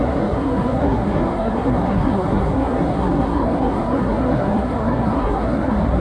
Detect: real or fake fake